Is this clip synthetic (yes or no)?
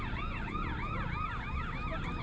no